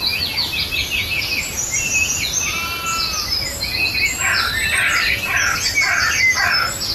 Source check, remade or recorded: recorded